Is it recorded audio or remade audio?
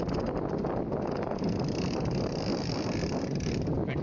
recorded